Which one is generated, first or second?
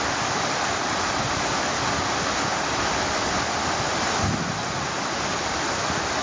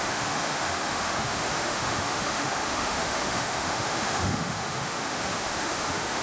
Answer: second